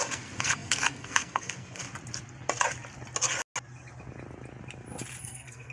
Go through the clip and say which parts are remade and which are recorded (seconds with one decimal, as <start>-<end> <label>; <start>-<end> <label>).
0.0-1.8 remade; 1.8-5.2 recorded; 5.2-5.7 remade